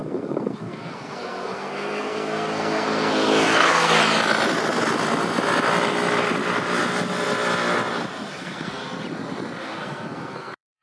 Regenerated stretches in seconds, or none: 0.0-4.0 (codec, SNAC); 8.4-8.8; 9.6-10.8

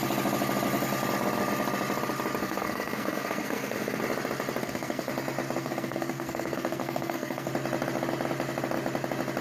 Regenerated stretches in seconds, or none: 2.4-4.0 (codec, SNAC); 4.6-5.1; 5.6-7.5

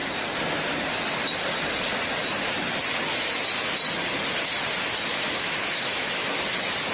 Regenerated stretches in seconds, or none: 5.1-6.4 (autoencoder, DAC-VAE)

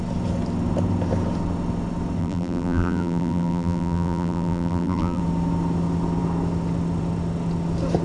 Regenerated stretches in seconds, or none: 2.2-5.2 (vocoder, BigVGAN v2)

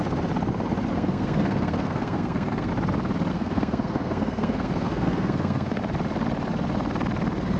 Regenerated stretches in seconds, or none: 0.9-2.7 (codec, SNAC); 3.3-5.8

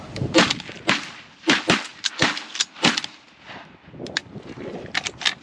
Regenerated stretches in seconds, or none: none